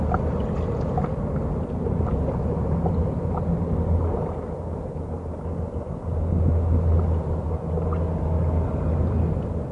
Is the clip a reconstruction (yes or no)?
no